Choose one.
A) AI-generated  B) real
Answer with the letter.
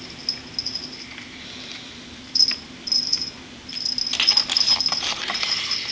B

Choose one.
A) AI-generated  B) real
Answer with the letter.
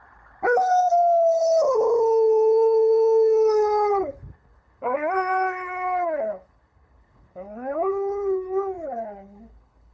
A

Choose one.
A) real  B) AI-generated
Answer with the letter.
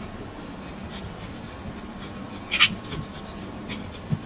A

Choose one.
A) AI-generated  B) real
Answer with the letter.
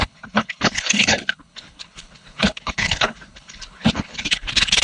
A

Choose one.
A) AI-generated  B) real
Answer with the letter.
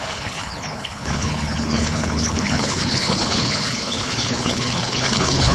A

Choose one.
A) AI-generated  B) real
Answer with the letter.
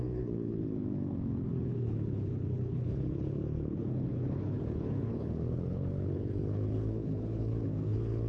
A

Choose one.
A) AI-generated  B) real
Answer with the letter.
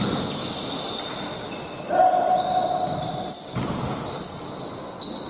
B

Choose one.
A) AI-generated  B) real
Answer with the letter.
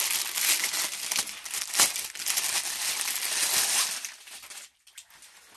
B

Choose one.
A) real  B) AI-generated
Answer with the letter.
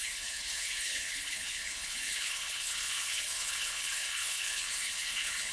B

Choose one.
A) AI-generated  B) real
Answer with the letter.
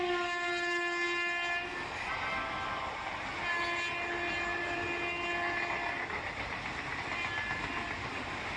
B